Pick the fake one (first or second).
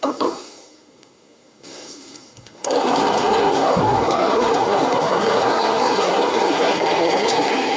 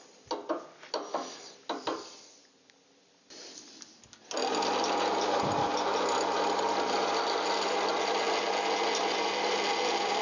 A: first